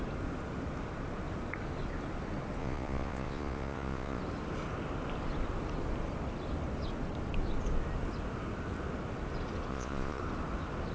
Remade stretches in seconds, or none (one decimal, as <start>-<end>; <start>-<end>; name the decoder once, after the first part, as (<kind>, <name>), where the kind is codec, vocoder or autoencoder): 2.6-4.2 (vocoder, Vocos); 9.7-10.2

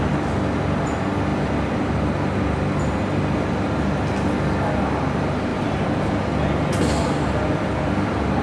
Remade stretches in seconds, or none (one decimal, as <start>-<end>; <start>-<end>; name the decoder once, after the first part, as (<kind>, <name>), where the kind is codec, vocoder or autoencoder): 5.5-6.1 (vocoder, BigVGAN v2)

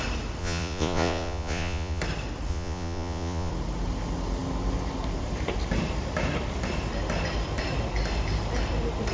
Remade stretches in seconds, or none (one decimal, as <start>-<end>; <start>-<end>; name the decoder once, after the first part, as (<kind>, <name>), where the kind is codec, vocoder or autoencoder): 0.4-2.0 (vocoder, Vocos); 2.5-3.5

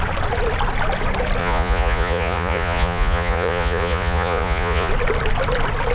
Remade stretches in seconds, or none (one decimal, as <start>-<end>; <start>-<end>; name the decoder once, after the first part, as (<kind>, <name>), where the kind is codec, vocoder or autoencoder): 1.4-4.9 (vocoder, Vocos)

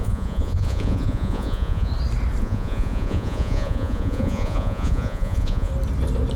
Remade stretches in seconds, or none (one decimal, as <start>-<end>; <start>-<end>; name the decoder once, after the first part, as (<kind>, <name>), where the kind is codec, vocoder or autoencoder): 0.0-1.9 (vocoder, Vocos); 2.4-5.7

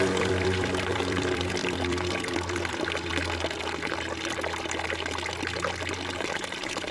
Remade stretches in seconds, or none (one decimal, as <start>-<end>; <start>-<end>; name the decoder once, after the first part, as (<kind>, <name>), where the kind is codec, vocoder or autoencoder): 0.0-3.1 (vocoder, BigVGAN v2); 6.1-6.9